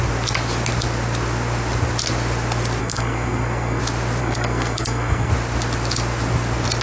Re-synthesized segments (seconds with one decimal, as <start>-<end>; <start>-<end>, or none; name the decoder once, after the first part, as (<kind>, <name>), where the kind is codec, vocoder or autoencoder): 2.8-3.8 (codec, SNAC); 4.2-5.3